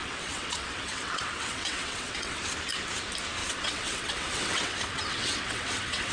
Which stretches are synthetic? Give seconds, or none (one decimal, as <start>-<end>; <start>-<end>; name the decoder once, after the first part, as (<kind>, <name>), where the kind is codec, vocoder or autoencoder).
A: 0.0-2.4 (vocoder, WaveNeXt); 3.4-6.1